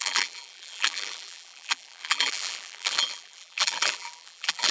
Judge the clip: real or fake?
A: fake